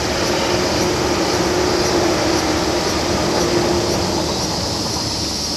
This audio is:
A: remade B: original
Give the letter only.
B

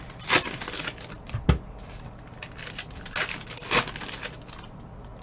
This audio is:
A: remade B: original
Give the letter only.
B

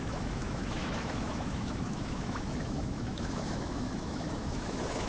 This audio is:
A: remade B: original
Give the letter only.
A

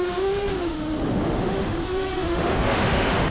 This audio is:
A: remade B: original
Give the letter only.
A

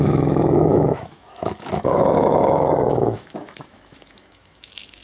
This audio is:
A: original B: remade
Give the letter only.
B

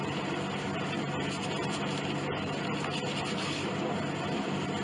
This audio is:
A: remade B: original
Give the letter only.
B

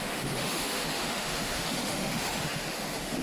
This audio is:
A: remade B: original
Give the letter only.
A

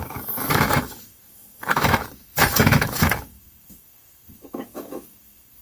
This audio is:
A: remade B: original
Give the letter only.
A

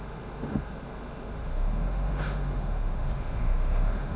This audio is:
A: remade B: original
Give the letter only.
A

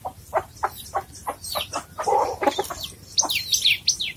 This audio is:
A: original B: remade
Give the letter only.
A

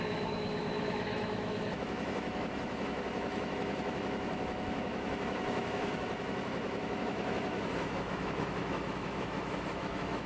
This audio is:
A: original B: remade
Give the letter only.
B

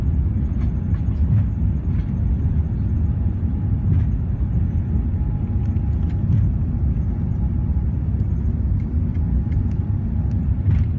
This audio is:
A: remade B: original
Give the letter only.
B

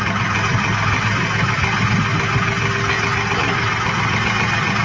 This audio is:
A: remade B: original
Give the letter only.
B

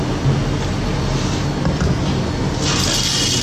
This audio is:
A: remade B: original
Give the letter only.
B